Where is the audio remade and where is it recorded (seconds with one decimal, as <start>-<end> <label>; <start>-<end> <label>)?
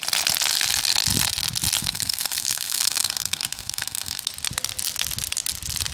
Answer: 0.0-1.8 recorded; 1.8-4.2 remade; 4.2-5.9 recorded